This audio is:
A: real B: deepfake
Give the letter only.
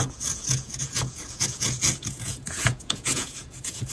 B